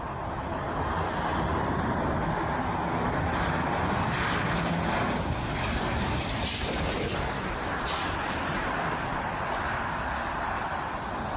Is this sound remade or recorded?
recorded